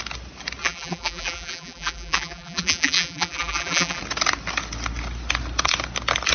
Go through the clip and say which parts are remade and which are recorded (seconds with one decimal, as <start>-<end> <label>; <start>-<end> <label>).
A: 0.0-0.6 recorded; 0.6-4.0 remade; 4.0-6.3 recorded